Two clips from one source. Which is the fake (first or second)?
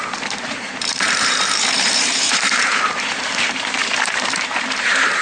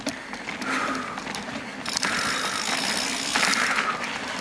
first